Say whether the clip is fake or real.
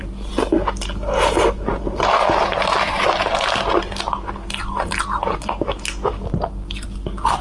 real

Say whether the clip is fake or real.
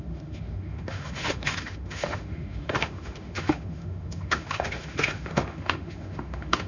fake